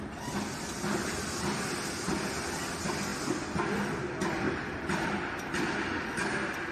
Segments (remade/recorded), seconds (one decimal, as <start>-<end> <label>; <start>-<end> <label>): 0.0-6.7 recorded